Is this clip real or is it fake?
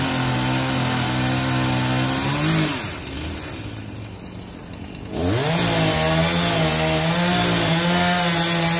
real